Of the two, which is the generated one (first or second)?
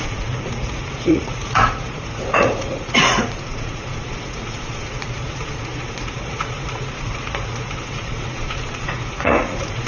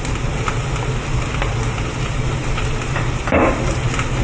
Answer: first